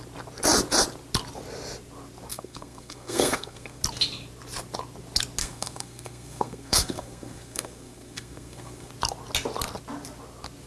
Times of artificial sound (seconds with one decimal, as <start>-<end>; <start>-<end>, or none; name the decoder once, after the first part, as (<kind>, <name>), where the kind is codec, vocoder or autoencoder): 2.3-3.8 (codec, SNAC); 5.4-8.9